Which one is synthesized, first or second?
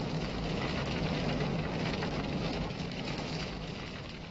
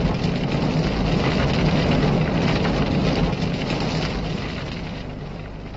first